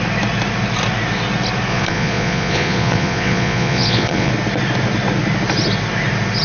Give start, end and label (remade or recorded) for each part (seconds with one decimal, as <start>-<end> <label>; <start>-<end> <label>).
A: 0.0-1.7 recorded; 1.7-4.3 remade; 4.3-6.4 recorded